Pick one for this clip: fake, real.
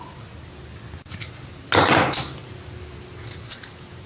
real